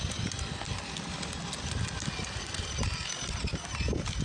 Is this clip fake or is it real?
real